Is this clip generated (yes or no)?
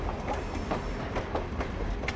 no